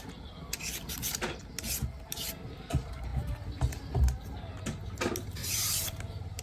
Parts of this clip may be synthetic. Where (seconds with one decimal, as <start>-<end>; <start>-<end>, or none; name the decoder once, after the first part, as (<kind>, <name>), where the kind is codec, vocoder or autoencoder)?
5.4-6.4 (vocoder, BigVGAN v2)